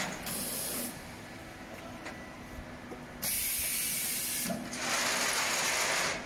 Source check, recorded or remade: recorded